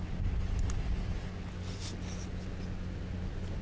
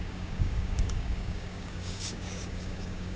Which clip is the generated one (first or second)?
second